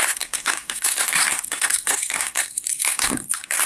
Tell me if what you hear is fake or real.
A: fake